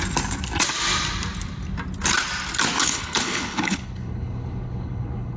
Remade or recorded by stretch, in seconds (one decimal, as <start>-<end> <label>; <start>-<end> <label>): 0.0-2.8 recorded; 2.8-5.4 remade